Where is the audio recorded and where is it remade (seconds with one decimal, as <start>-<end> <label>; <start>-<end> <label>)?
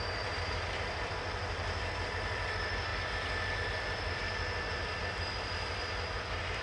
0.0-2.9 remade; 2.9-3.6 recorded; 3.6-6.6 remade